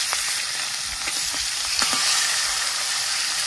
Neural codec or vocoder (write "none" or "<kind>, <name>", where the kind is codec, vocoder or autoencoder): none